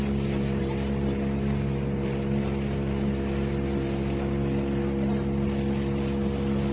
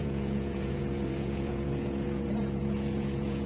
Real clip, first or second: first